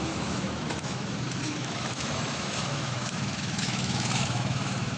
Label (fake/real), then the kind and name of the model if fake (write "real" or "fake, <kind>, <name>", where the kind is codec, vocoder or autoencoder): fake, autoencoder, DAC-VAE